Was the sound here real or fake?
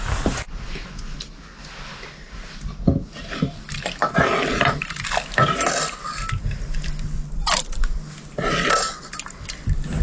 real